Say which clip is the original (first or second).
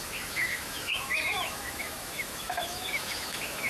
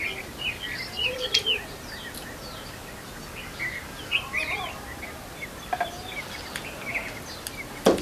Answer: second